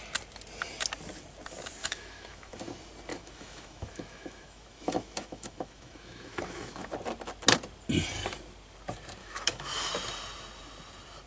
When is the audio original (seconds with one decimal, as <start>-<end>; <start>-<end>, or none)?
0.0-1.8; 2.6-3.1; 6.9-9.2; 9.9-11.3